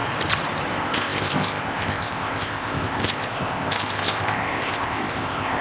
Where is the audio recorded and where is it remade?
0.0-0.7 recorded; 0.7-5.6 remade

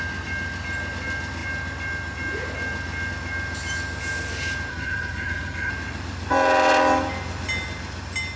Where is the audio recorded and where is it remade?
0.0-4.7 recorded; 4.7-5.7 remade; 5.7-8.4 recorded

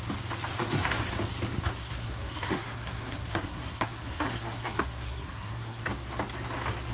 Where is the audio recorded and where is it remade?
0.0-0.5 recorded; 0.5-1.0 remade; 1.0-1.8 recorded; 1.8-5.9 remade; 5.9-6.9 recorded

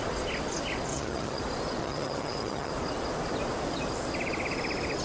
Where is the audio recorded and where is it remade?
0.0-0.9 recorded; 0.9-1.4 remade; 1.4-1.8 recorded; 1.8-2.7 remade; 2.7-5.0 recorded

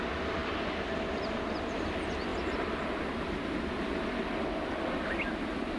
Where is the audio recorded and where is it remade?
0.0-5.8 recorded

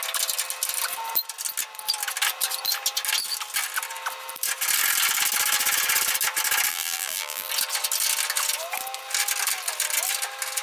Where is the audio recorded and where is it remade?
0.0-6.7 recorded; 6.7-7.5 remade; 7.5-10.6 recorded

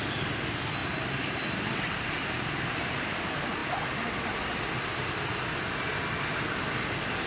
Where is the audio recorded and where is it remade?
0.0-0.8 recorded; 0.8-3.2 remade; 3.2-7.3 recorded